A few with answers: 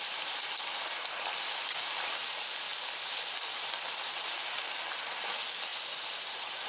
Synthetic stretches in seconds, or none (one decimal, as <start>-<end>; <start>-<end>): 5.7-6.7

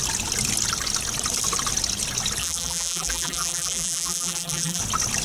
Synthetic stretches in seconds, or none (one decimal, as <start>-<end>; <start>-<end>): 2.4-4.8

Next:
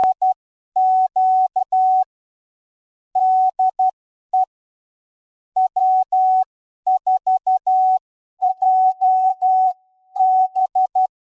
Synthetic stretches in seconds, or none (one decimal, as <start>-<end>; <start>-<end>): 8.4-10.6

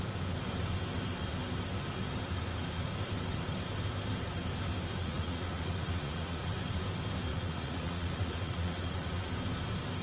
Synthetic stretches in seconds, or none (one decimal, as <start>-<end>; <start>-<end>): 5.0-6.5; 7.3-9.3

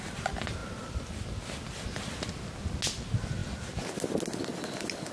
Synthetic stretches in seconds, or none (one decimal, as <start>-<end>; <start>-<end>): none

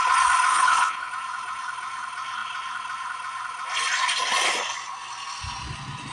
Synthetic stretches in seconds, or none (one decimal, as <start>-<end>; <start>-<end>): 0.5-1.1

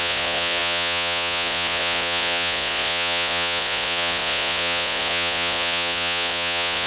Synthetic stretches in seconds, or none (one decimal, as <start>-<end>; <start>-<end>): 0.0-6.9